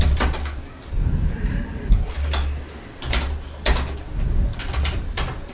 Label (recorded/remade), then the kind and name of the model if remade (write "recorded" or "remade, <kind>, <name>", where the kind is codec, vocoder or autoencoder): recorded